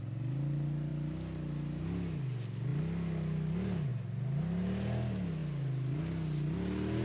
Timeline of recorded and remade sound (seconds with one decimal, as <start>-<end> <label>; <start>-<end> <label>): 0.0-7.0 recorded